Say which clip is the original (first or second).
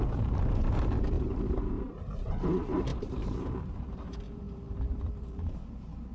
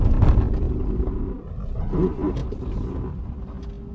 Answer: second